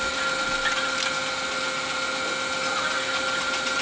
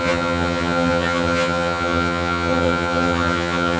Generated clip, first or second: second